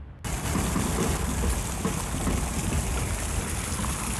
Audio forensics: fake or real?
real